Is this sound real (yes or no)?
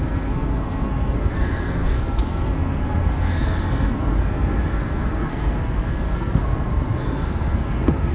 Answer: no